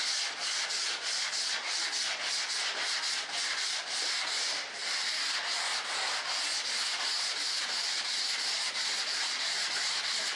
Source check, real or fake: real